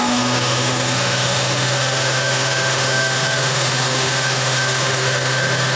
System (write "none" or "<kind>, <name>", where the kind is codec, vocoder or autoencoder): autoencoder, DAC-VAE